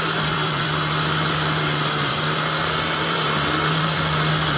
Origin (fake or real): fake